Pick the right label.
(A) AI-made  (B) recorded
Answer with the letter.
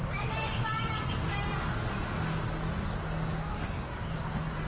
B